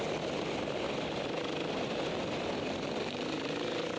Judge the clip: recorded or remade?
remade